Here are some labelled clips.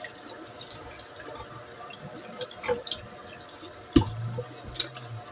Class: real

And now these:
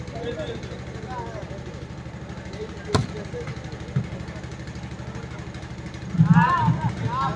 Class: real